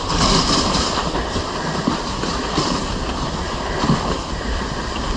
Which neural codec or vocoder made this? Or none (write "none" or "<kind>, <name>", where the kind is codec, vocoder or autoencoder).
none